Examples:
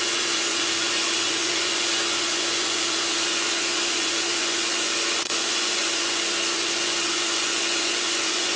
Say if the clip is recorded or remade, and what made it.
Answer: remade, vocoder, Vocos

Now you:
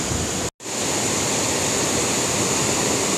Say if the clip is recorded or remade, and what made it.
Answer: recorded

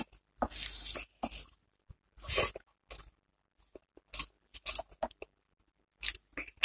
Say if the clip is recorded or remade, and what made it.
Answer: recorded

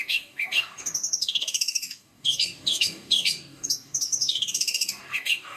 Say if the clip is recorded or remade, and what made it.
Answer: remade, codec, DAC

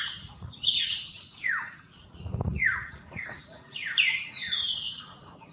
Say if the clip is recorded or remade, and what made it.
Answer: remade, vocoder, Vocos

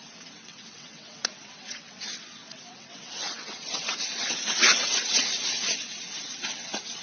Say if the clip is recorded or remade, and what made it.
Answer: remade, vocoder, WaveNeXt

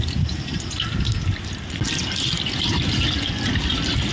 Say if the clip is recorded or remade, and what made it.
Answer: recorded